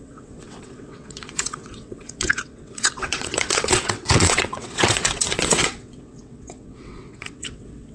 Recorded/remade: remade